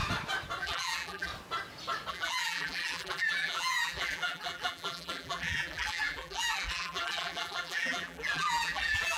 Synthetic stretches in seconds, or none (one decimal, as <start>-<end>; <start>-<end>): 0.6-1.3; 2.1-9.2